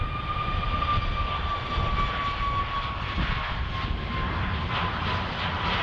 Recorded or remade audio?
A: recorded